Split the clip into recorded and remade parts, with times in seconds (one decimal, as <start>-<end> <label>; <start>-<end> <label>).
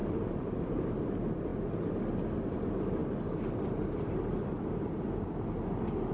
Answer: 0.0-0.8 remade; 0.8-6.1 recorded